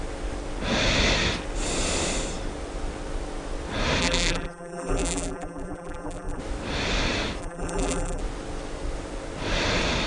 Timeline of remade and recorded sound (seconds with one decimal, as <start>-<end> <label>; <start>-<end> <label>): 0.0-4.0 recorded; 4.0-6.4 remade; 6.4-7.4 recorded; 7.4-8.2 remade; 8.2-10.1 recorded